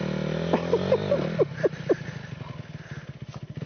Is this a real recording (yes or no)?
yes